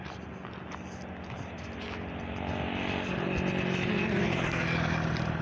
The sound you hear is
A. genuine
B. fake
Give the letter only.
A